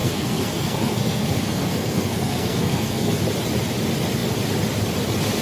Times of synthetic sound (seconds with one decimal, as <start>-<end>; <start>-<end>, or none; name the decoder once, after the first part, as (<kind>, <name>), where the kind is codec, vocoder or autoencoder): 0.0-3.2 (codec, SNAC)